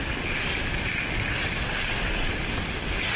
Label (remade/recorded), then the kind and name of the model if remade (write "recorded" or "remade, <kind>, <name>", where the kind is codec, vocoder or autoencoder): recorded